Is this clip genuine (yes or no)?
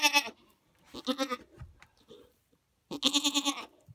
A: yes